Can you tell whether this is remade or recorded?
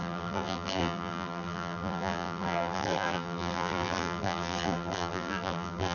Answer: remade